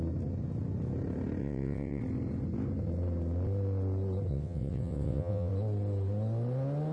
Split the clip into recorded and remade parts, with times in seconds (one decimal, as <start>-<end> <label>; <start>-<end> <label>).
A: 0.0-1.4 recorded; 1.4-2.0 remade; 2.0-4.3 recorded; 4.3-5.5 remade; 5.5-6.9 recorded